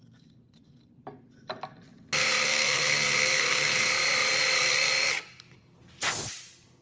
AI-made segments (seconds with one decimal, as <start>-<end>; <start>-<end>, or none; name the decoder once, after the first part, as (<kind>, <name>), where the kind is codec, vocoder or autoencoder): 2.4-3.9 (codec, SNAC)